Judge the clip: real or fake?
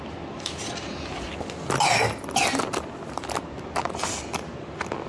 real